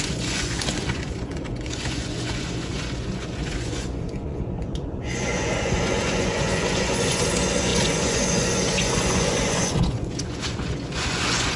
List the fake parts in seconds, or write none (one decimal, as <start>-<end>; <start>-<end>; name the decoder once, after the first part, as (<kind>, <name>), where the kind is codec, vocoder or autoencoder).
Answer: 0.0-11.6 (vocoder, Vocos)